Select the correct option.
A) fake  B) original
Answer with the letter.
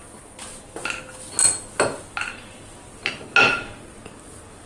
B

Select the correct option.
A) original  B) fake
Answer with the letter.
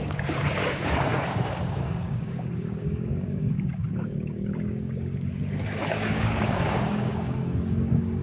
B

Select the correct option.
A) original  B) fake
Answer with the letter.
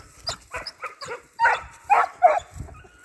A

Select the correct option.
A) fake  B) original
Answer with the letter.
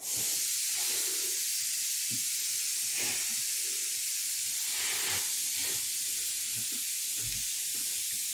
B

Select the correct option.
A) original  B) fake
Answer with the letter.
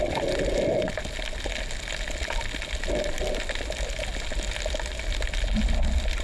A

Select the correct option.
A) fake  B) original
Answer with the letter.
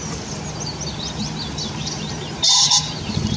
B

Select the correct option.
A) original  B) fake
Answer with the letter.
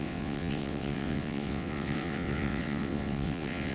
B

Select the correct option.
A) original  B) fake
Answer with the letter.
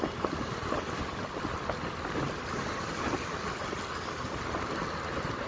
A